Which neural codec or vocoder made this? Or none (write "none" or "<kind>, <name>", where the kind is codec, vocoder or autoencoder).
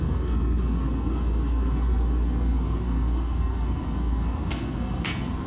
codec, SNAC